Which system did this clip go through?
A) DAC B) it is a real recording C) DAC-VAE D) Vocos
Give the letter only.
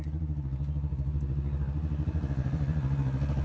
D